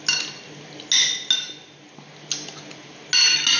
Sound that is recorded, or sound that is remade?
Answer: recorded